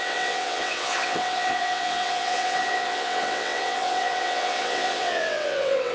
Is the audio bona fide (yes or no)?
no